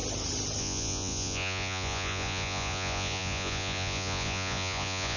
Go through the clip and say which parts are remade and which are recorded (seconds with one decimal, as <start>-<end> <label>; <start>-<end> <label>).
0.0-0.6 recorded; 0.6-5.2 remade